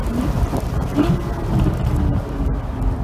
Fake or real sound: real